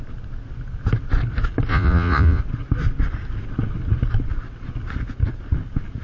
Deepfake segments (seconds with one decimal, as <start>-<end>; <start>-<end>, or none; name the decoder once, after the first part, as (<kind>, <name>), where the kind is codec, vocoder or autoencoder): 1.7-2.4 (vocoder, Vocos)